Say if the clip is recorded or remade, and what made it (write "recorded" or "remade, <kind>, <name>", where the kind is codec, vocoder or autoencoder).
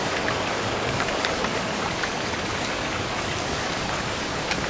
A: remade, codec, DAC